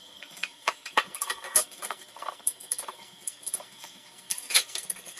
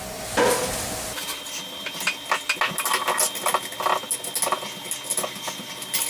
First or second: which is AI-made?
first